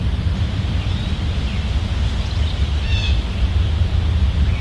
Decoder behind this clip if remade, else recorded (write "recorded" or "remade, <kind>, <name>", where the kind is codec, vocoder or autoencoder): recorded